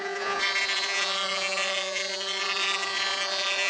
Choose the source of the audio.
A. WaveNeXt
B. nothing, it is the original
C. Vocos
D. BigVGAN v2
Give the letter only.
C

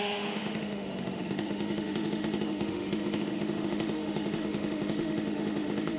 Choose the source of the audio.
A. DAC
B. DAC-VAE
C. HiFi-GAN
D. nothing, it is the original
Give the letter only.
B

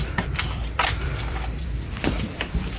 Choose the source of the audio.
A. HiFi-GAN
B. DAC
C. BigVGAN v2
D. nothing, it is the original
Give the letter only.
C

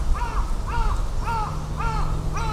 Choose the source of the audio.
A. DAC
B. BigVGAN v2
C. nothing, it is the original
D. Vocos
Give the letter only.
C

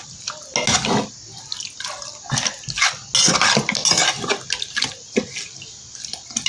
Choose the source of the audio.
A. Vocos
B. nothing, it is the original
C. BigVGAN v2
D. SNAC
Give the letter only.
B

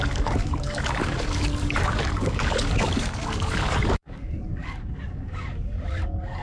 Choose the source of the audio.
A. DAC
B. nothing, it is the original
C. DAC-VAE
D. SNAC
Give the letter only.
A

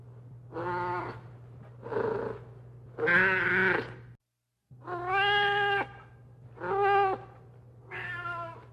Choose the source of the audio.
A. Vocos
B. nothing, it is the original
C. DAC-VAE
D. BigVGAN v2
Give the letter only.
B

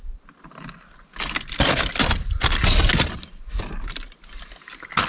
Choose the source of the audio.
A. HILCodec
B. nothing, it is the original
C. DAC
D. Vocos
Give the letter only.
B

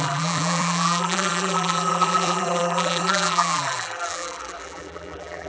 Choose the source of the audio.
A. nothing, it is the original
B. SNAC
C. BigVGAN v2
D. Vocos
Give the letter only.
C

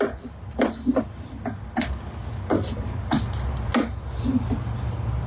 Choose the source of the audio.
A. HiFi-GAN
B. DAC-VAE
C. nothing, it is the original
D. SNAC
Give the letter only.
C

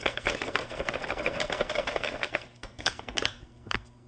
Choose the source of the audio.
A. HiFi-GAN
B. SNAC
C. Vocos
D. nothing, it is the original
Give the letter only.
B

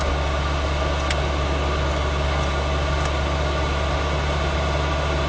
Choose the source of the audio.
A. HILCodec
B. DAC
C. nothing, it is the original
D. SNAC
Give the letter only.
C